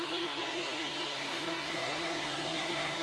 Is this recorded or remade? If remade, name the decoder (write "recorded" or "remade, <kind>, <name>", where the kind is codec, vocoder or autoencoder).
remade, codec, SNAC